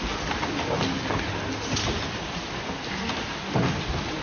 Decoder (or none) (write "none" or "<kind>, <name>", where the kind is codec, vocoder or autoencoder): none